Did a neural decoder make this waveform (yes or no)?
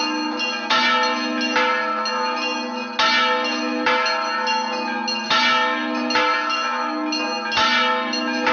no